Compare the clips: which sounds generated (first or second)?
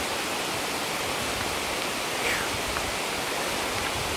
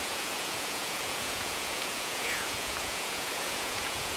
second